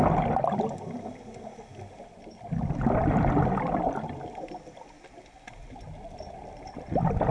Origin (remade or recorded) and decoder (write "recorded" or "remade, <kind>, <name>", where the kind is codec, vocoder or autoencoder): recorded